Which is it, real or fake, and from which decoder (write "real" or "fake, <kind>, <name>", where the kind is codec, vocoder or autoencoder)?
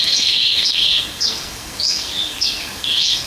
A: fake, codec, SNAC